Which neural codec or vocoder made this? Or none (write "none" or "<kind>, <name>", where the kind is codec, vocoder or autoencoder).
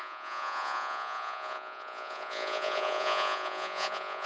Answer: vocoder, Vocos